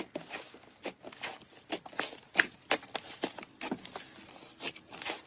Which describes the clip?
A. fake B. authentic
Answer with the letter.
B